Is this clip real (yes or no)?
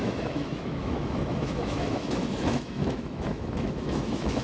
no